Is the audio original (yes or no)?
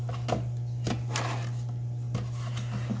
yes